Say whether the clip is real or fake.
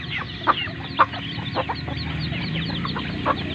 real